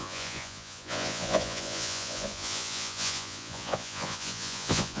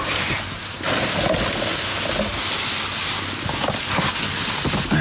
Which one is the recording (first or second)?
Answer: second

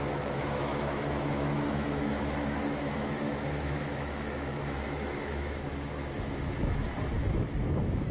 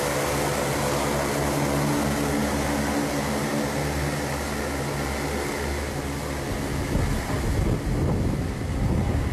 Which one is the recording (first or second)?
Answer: second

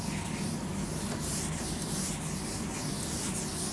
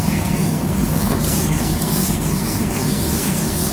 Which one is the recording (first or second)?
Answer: first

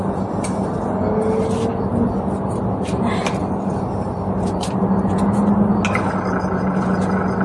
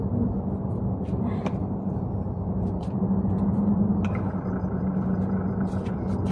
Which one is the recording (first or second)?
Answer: first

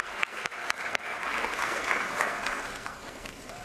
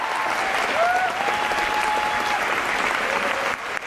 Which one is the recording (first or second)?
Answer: second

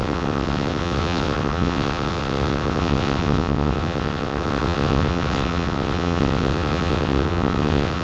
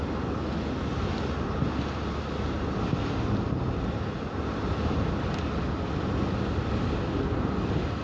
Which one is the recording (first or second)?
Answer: second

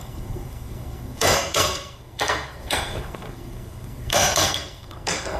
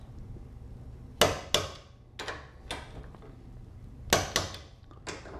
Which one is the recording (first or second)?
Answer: second